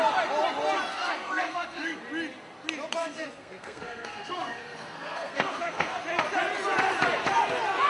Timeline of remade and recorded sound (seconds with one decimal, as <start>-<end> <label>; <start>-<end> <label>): 0.0-0.9 recorded; 0.9-2.0 remade; 2.0-3.0 recorded; 3.0-6.0 remade; 6.0-7.9 recorded